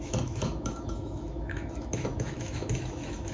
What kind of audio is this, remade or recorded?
remade